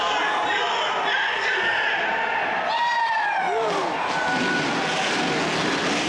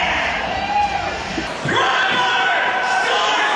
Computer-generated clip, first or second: second